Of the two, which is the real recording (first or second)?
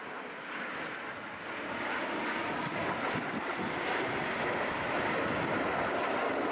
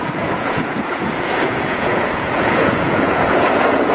first